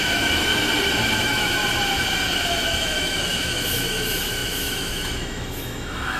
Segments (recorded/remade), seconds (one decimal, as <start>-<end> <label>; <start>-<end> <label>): 0.0-0.5 remade; 0.5-1.2 recorded; 1.2-1.6 remade; 1.6-2.3 recorded; 2.3-6.2 remade